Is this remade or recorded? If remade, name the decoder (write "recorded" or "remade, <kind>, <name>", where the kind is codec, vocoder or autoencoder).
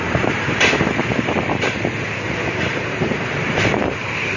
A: remade, vocoder, BigVGAN v2